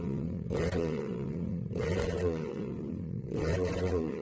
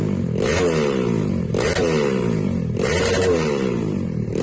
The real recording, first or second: second